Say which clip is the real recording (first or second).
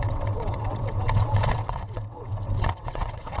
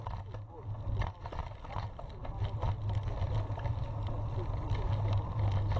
second